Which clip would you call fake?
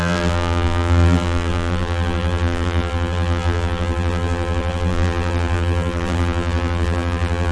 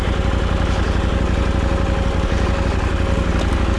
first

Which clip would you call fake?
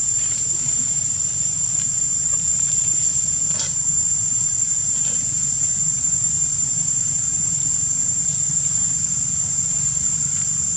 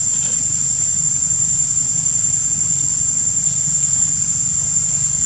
first